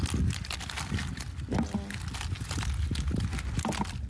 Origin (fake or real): real